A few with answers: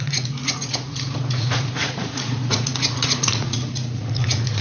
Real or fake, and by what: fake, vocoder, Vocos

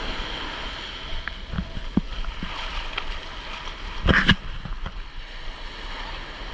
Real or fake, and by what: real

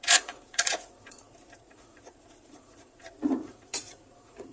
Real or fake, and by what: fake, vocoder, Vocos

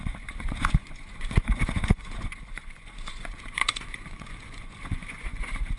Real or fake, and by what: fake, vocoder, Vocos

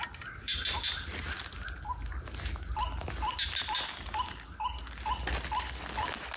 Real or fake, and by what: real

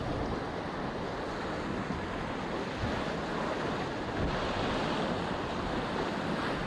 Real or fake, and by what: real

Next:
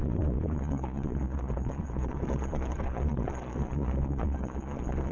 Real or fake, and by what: fake, vocoder, Vocos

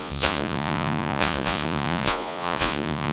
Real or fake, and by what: fake, vocoder, Vocos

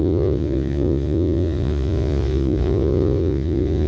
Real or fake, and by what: fake, vocoder, Vocos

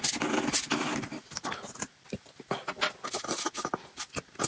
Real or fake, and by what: real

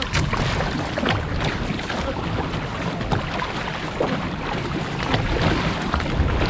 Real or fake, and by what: real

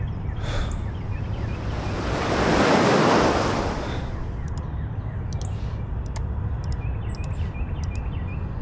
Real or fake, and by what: real